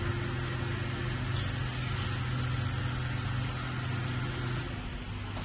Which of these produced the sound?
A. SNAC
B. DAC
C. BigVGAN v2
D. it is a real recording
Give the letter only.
D